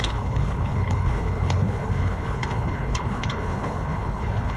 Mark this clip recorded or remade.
remade